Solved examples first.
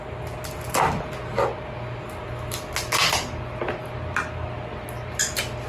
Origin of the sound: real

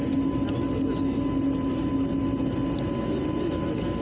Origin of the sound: real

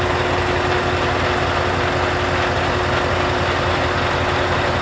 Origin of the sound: real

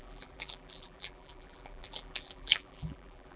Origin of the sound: fake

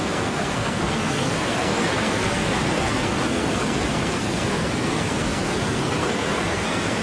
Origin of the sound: fake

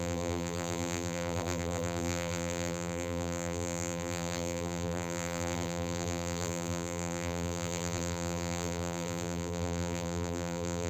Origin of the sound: fake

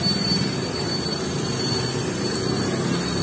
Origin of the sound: real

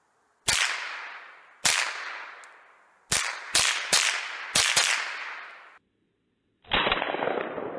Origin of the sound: real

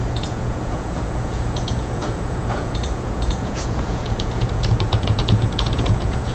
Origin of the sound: fake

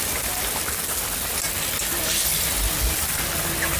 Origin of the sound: real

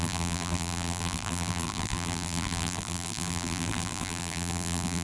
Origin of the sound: fake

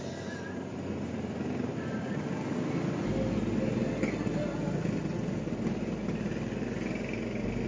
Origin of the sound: real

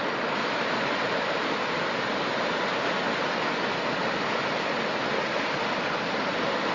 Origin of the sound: real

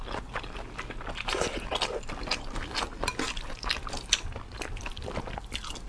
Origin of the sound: real